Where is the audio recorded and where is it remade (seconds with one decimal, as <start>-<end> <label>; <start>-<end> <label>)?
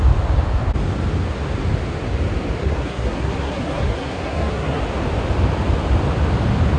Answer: 0.0-2.6 recorded; 2.6-4.8 remade; 4.8-6.8 recorded